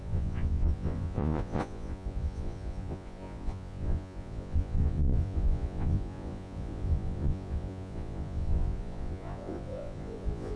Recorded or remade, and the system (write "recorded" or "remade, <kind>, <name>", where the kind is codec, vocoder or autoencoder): remade, vocoder, Vocos